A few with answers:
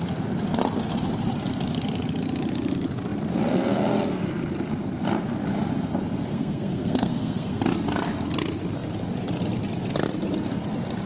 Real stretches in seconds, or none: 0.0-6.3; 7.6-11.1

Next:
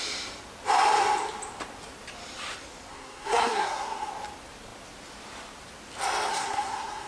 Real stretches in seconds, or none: 0.0-2.9; 4.1-6.3

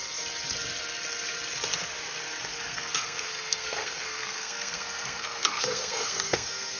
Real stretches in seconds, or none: 0.0-2.5

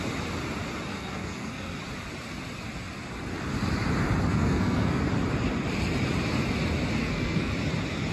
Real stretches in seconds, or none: 0.0-0.9; 1.8-4.3; 5.0-7.0; 7.5-8.1